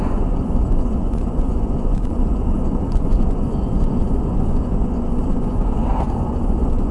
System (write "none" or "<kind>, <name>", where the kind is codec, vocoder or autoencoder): vocoder, Vocos